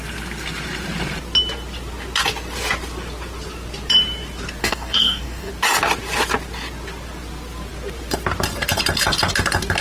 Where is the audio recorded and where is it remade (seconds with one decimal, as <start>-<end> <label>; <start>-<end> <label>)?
0.0-4.6 recorded; 4.6-5.5 remade; 5.5-9.8 recorded